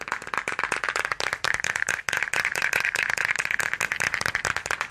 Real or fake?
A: real